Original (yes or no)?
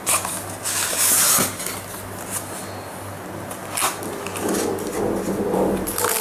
yes